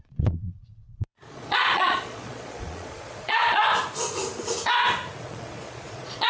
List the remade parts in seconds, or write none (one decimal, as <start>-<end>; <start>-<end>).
0.0-3.6; 5.2-6.3